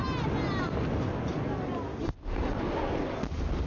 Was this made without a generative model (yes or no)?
yes